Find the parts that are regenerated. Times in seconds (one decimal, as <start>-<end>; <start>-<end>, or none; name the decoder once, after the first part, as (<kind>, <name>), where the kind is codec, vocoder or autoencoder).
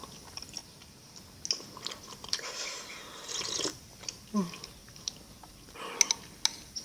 0.6-1.2 (vocoder, BigVGAN v2); 2.2-4.3; 4.8-5.8